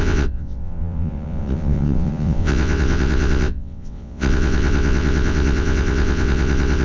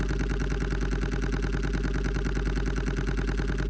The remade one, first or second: first